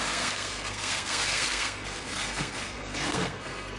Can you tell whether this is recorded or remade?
remade